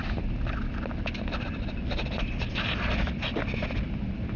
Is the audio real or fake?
real